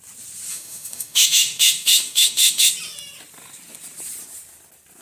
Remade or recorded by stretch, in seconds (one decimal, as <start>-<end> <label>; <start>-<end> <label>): 0.0-0.5 recorded; 0.5-2.7 remade; 2.7-5.0 recorded